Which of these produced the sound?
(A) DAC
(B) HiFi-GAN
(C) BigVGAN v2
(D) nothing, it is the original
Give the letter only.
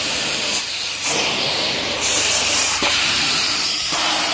C